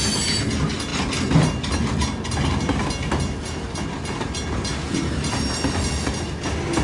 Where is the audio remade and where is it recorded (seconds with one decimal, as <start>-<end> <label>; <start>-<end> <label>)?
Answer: 0.0-6.8 recorded